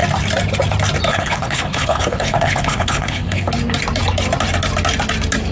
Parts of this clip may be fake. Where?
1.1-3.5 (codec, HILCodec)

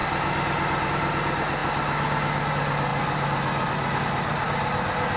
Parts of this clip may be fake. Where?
none

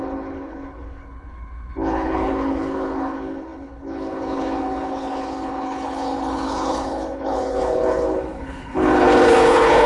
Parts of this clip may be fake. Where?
0.0-9.9 (codec, HILCodec)

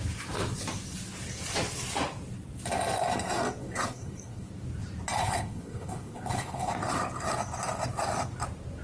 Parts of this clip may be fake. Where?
3.6-4.5 (codec, HILCodec); 5.2-6.7

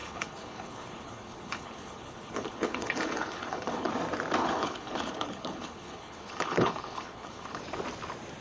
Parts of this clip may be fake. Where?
0.0-3.9 (codec, HILCodec); 4.4-7.6